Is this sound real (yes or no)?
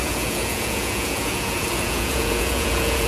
no